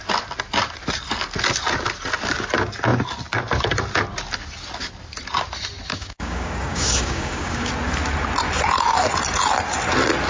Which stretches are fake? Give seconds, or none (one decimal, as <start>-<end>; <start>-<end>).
5.9-7.7